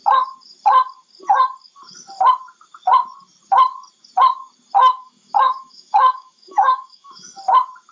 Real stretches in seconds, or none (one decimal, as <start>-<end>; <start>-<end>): 0.0-4.8; 7.4-7.9